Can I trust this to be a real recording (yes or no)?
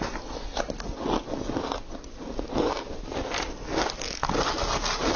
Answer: yes